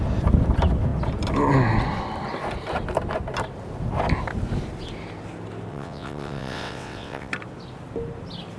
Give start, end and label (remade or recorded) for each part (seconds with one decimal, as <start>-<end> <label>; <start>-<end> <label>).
0.0-5.7 recorded; 5.7-7.3 remade; 7.3-8.6 recorded